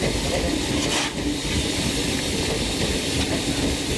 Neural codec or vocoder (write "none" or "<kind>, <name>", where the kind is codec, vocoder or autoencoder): none